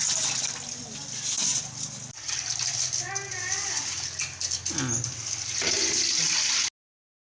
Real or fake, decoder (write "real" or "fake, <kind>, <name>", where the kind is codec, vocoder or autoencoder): real